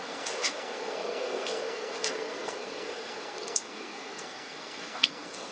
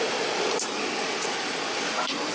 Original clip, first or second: second